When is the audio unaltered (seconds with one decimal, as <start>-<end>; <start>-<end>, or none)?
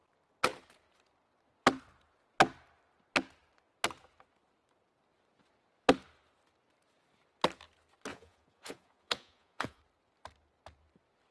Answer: 0.0-8.1; 9.8-11.3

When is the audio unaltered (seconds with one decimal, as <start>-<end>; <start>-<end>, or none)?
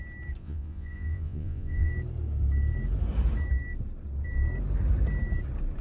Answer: 0.0-0.4; 1.9-5.8